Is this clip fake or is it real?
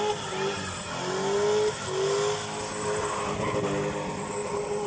real